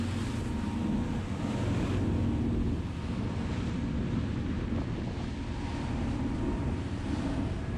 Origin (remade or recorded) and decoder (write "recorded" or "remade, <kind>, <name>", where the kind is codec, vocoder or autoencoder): recorded